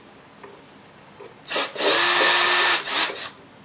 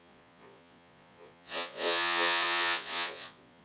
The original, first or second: first